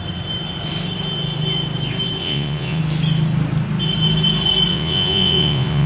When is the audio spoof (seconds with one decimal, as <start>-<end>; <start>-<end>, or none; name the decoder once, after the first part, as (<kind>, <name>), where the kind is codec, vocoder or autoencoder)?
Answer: 2.2-2.8 (vocoder, Vocos); 4.7-5.9